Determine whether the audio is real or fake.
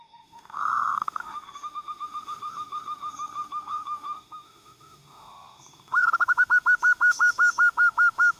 fake